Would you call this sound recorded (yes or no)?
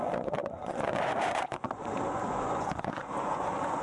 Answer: no